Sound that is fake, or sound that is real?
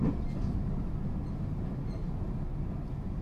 real